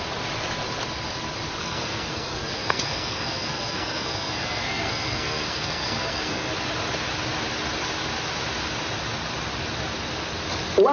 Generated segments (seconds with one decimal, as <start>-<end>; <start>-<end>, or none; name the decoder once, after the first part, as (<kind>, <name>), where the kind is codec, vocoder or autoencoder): 1.6-6.5 (codec, SNAC)